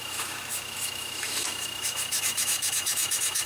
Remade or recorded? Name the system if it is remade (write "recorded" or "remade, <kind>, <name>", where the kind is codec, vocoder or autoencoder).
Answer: remade, autoencoder, DAC-VAE